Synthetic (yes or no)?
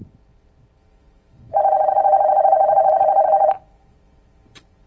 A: yes